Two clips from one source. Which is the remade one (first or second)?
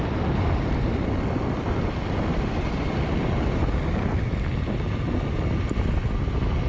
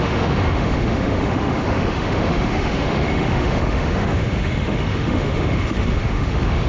second